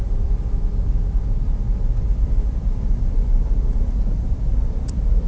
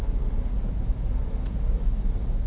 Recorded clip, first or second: second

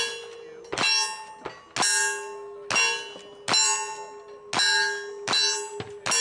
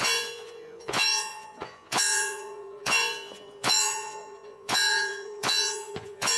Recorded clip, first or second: first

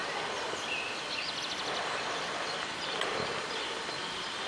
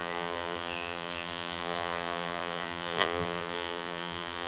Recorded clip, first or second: first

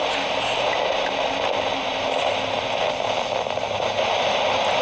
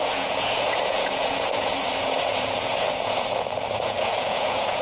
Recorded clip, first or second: first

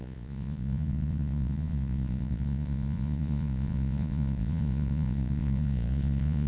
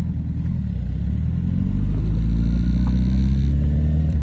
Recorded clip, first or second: second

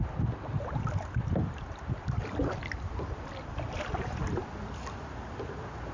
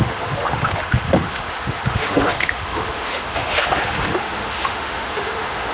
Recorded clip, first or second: first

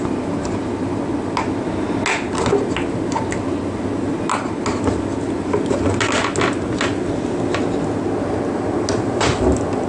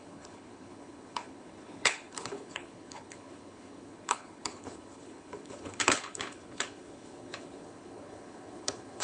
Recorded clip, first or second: first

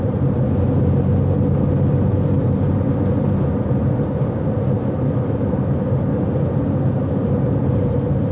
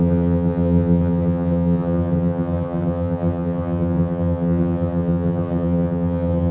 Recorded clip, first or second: first